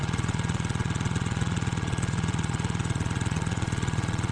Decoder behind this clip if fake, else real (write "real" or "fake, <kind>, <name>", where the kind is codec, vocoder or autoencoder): fake, vocoder, Vocos